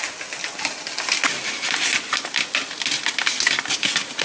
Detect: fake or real real